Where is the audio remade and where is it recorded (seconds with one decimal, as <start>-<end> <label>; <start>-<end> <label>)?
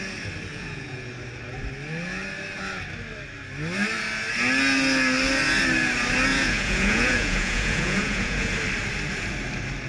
0.0-0.5 recorded; 0.5-1.1 remade; 1.1-6.3 recorded; 6.3-8.5 remade; 8.5-9.9 recorded